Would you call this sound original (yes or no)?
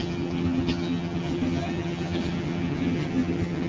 no